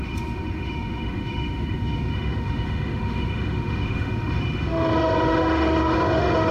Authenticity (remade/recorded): remade